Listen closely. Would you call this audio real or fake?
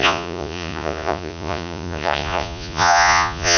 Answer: fake